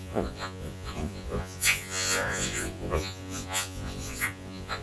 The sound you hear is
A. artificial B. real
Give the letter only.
A